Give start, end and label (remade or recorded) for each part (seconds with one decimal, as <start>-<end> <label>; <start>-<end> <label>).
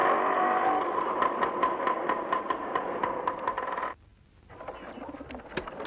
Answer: 0.0-5.9 recorded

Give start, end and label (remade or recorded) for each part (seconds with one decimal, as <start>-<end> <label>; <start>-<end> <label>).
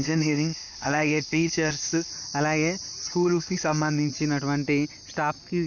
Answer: 0.0-2.1 remade; 2.1-3.1 recorded; 3.1-4.1 remade; 4.1-5.7 recorded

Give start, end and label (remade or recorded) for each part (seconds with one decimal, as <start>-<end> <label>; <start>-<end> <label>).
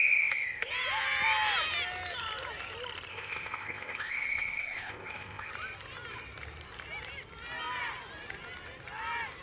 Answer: 0.0-0.7 remade; 0.7-3.1 recorded; 3.1-5.5 remade; 5.5-9.4 recorded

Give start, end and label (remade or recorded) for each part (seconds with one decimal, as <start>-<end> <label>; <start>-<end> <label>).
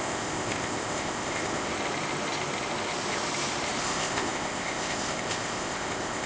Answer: 0.0-1.7 remade; 1.7-3.8 recorded; 3.8-6.3 remade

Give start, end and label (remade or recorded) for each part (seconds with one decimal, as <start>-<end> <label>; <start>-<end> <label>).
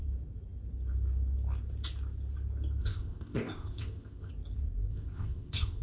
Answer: 0.0-2.8 recorded; 2.8-4.3 remade; 4.3-4.9 recorded; 4.9-5.8 remade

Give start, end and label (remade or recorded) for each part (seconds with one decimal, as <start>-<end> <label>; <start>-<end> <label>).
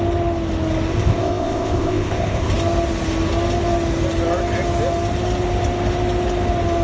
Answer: 0.0-0.9 recorded; 0.9-2.5 remade; 2.5-6.8 recorded